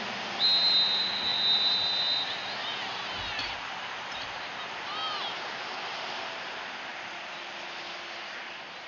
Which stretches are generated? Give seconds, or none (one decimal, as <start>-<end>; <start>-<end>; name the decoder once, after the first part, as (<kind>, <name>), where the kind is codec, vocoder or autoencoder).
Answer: none